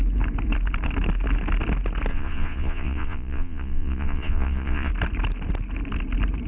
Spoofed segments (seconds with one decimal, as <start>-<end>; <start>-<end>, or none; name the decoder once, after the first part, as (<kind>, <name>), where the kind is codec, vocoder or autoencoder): 2.1-4.9 (vocoder, Vocos)